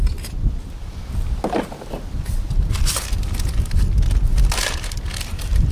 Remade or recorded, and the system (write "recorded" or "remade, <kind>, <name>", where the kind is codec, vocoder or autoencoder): recorded